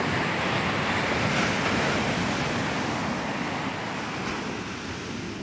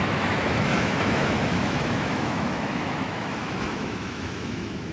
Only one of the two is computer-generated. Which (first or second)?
second